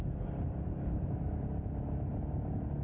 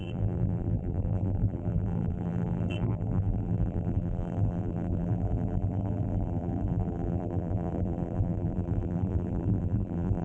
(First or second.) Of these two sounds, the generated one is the second